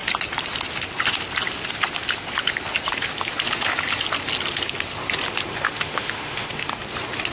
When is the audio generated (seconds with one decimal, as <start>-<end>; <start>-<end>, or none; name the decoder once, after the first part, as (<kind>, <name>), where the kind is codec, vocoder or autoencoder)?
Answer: 5.5-6.7 (autoencoder, DAC-VAE)